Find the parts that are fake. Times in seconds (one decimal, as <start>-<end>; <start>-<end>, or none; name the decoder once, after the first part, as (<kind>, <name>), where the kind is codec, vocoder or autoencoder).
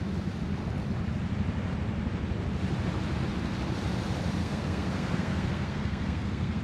4.4-6.6 (codec, SNAC)